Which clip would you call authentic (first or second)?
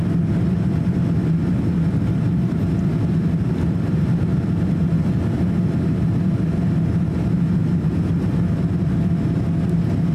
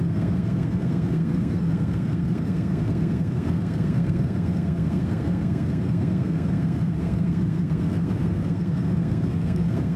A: first